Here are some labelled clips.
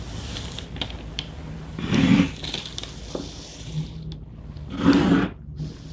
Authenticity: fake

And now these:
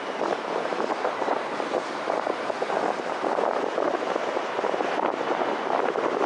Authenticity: fake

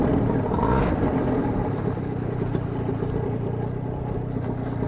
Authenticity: real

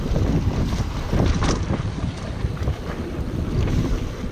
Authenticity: fake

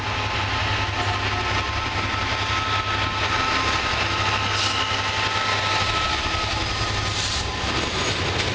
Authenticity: real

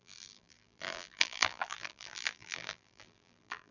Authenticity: fake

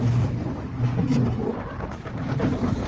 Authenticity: fake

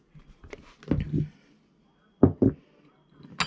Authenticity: real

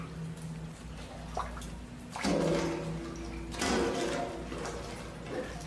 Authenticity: real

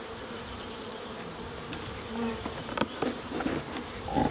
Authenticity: fake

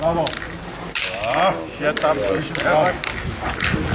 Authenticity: real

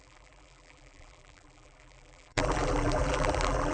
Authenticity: fake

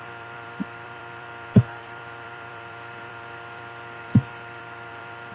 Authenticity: fake